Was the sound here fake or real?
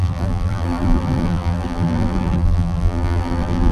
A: fake